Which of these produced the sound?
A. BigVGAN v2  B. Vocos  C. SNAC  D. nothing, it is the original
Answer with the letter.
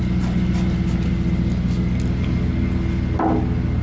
D